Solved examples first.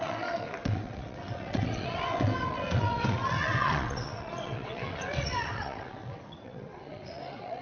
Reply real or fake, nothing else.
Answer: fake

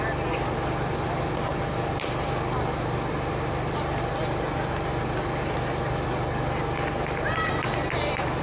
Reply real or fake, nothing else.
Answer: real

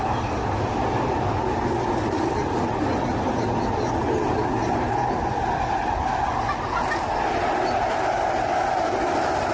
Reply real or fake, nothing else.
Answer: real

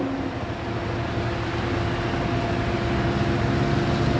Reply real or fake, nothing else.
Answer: real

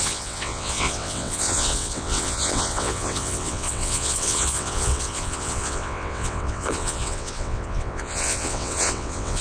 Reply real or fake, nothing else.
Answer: fake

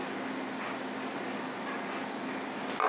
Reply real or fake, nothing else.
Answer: real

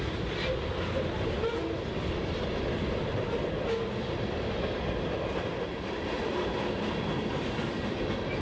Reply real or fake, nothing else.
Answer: real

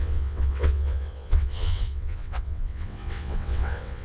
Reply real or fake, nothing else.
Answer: fake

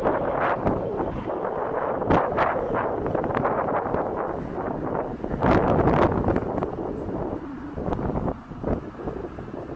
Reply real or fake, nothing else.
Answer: real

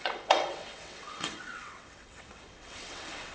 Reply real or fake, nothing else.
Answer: fake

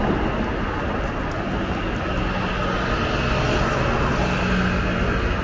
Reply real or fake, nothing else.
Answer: real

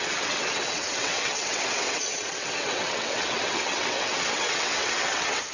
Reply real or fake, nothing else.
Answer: fake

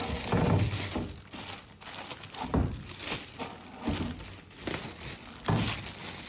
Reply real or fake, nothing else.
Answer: real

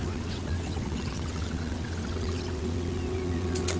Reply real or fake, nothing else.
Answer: fake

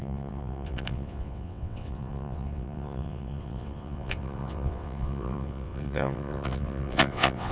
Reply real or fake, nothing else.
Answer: fake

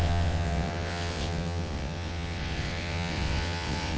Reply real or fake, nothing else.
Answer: fake